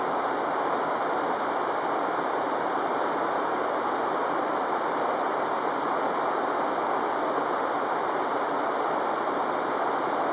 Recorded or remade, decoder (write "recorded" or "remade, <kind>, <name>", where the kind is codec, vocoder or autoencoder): recorded